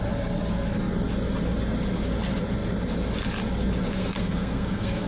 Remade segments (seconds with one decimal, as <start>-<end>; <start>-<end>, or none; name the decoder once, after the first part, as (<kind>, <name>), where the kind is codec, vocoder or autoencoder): 4.0-5.1 (codec, SNAC)

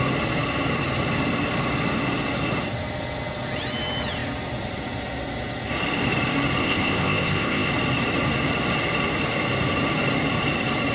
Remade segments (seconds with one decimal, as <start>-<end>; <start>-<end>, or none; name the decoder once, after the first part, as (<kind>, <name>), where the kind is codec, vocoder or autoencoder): 6.6-7.7 (codec, ZipCodec)

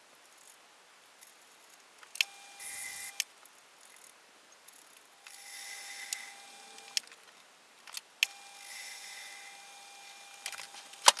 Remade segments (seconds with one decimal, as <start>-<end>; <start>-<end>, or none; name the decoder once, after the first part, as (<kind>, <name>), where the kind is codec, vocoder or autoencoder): 8.7-9.3 (vocoder, Vocos)